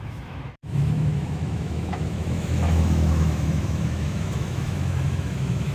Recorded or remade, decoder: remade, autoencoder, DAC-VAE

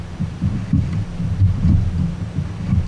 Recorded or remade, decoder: recorded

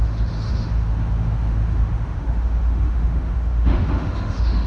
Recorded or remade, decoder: remade, autoencoder, DAC-VAE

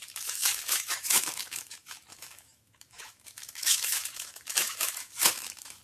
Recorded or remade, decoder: remade, autoencoder, DAC-VAE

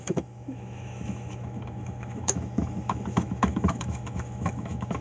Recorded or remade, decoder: remade, autoencoder, DAC-VAE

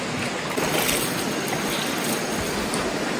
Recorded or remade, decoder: recorded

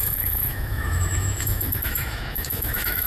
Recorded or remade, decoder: remade, autoencoder, DAC-VAE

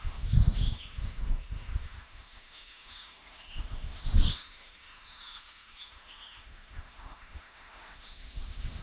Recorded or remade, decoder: remade, autoencoder, DAC-VAE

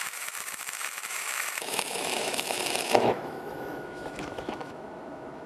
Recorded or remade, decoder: remade, autoencoder, DAC-VAE